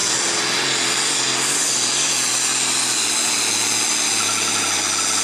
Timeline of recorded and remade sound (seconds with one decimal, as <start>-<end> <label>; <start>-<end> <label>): 0.0-5.2 recorded